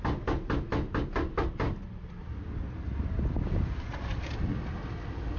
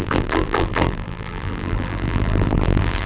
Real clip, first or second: first